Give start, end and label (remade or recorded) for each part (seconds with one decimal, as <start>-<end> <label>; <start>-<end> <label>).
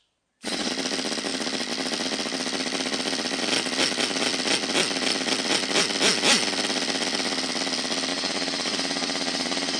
0.0-0.7 remade; 0.7-8.1 recorded; 8.1-9.8 remade